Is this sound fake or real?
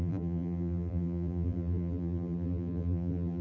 fake